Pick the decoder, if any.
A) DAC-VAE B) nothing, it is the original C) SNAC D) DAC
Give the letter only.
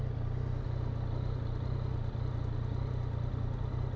B